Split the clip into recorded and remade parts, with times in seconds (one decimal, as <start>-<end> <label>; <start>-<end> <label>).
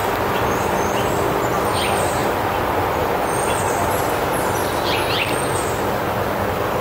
0.0-6.8 recorded